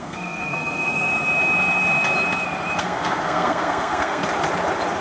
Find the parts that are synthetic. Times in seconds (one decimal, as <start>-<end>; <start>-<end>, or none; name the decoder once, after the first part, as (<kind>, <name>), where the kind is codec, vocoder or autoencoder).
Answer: 0.0-1.1 (codec, SNAC); 2.8-4.2